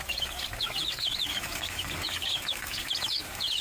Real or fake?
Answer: fake